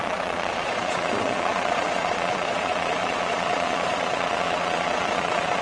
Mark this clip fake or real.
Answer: fake